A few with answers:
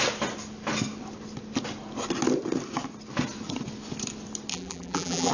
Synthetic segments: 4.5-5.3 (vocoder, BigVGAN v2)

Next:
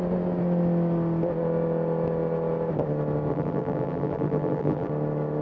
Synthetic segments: 3.3-4.9 (vocoder, BigVGAN v2)

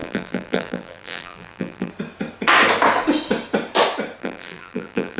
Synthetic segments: 0.0-1.9 (vocoder, BigVGAN v2); 4.2-5.2

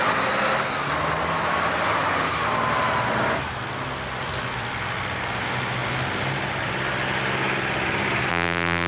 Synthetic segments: 8.3-8.9 (vocoder, BigVGAN v2)

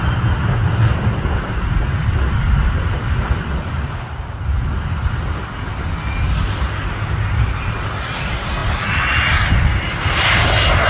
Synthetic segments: none

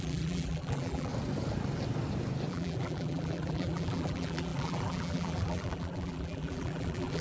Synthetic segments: 0.0-1.1 (vocoder, BigVGAN v2); 2.5-7.2